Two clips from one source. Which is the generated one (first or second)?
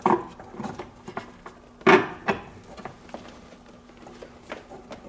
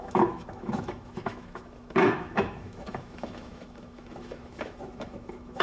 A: second